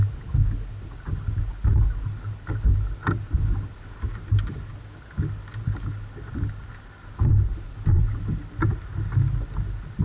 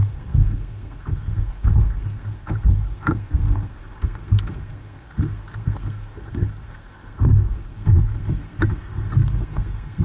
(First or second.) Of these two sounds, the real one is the first